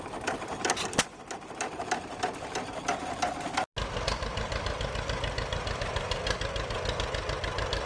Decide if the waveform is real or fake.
real